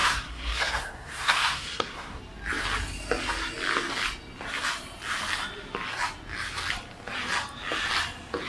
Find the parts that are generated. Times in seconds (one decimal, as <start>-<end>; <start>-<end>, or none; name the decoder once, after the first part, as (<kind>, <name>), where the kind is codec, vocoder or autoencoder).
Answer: 0.0-2.2 (codec, SNAC)